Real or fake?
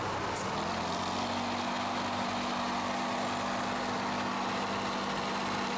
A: real